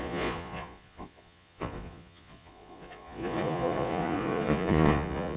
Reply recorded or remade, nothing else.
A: remade